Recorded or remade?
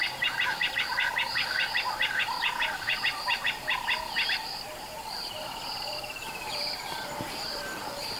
remade